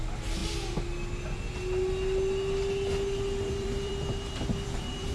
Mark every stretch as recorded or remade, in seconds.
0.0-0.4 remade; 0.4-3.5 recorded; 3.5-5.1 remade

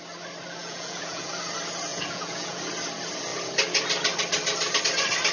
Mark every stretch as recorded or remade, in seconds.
0.0-0.6 recorded; 0.6-1.3 remade; 1.3-1.9 recorded; 1.9-2.6 remade; 2.6-5.3 recorded

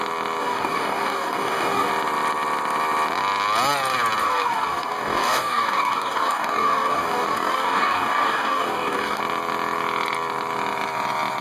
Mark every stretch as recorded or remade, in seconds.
0.0-0.4 recorded; 0.4-1.9 remade; 1.9-4.2 recorded; 4.2-9.2 remade; 9.2-11.4 recorded

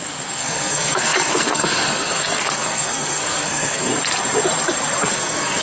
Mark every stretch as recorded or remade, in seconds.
0.0-3.9 remade; 3.9-5.1 recorded; 5.1-5.6 remade

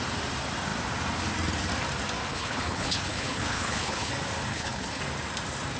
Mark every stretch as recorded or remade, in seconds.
0.0-2.3 recorded; 2.3-4.1 remade; 4.1-4.5 recorded; 4.5-5.0 remade; 5.0-5.8 recorded

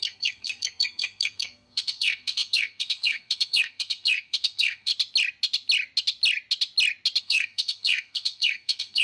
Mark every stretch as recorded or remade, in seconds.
0.0-4.9 remade; 4.9-7.2 recorded; 7.2-9.0 remade